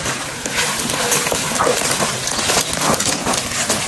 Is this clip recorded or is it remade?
recorded